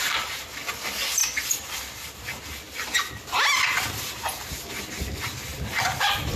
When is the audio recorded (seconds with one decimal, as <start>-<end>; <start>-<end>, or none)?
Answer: 0.0-6.4